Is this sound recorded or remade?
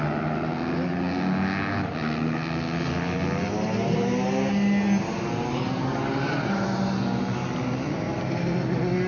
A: recorded